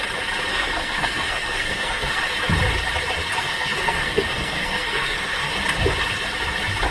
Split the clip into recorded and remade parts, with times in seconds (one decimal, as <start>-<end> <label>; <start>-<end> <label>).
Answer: 0.0-0.5 recorded; 0.5-2.2 remade; 2.2-3.4 recorded; 3.4-5.5 remade; 5.5-6.9 recorded